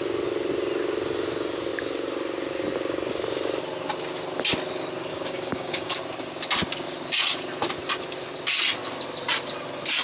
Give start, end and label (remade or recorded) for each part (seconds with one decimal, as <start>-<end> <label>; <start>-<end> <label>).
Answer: 0.0-5.1 recorded; 5.1-6.0 remade; 6.0-10.0 recorded